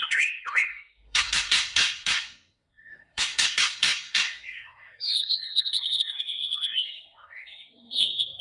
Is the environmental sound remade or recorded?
remade